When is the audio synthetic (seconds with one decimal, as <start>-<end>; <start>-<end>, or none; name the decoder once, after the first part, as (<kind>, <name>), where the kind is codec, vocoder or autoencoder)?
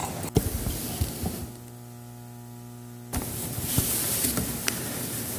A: 3.2-5.4 (vocoder, BigVGAN v2)